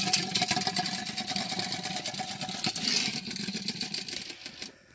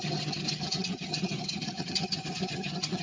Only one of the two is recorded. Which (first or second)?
first